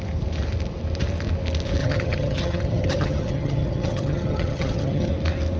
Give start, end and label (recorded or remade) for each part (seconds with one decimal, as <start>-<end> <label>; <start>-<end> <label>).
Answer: 0.0-1.8 recorded; 1.8-5.1 remade; 5.1-5.6 recorded